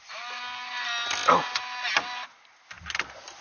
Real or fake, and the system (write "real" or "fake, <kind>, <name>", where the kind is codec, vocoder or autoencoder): real